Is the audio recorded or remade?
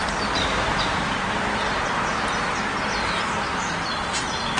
recorded